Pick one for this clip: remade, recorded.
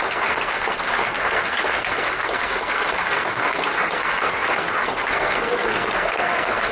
remade